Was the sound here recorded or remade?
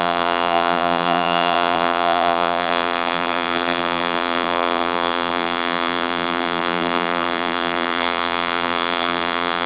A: remade